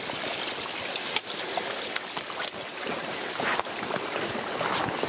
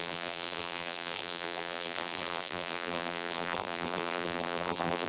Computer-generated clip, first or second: second